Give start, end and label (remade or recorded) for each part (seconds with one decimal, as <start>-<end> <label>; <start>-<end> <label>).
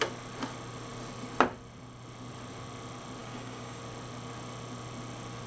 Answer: 0.0-3.2 recorded; 3.2-3.8 remade; 3.8-5.5 recorded